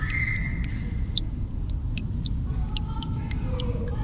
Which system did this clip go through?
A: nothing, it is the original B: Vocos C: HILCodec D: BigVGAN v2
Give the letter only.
A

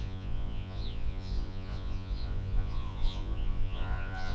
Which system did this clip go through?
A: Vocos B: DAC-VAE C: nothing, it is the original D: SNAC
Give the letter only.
A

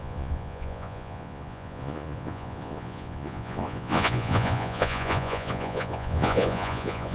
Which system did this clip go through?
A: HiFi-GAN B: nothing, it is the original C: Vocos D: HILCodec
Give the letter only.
C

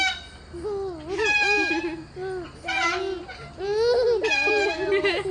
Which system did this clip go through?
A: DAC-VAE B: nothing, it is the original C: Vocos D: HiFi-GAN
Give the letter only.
B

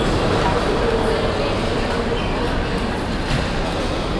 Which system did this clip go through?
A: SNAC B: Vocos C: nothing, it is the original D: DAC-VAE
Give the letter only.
C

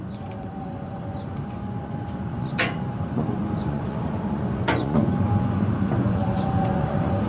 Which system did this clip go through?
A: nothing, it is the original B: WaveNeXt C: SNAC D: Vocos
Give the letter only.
D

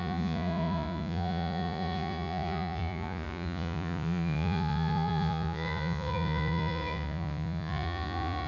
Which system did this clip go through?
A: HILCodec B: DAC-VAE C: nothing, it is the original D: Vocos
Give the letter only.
D